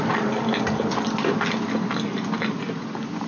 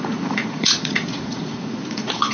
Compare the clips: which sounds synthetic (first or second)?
second